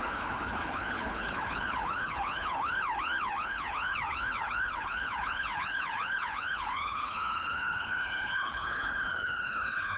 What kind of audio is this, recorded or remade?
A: remade